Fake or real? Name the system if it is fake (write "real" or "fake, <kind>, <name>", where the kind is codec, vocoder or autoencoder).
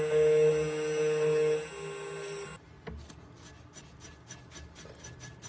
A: real